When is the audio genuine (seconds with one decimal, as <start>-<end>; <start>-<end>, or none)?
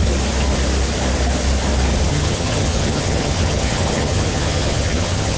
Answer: 0.0-2.1